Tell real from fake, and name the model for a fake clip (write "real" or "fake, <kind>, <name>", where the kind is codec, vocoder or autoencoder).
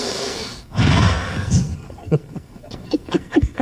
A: fake, codec, SNAC